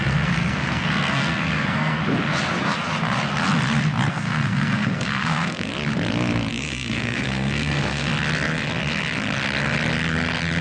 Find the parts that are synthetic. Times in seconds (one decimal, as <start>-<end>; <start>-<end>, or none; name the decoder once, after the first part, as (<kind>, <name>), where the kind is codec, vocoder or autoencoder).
0.0-2.0 (codec, SNAC); 4.1-5.7; 6.5-8.1